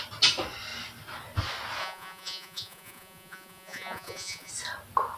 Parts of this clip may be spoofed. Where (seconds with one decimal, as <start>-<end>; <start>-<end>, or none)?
1.8-4.5